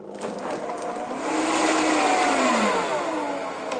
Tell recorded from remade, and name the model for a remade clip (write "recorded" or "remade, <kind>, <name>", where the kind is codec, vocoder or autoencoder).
recorded